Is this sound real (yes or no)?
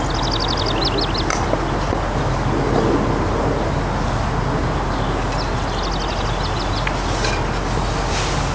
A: yes